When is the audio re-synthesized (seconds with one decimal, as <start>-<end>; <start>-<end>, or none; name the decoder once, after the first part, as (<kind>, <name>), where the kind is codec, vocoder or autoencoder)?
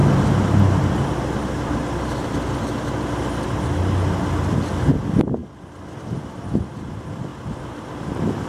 none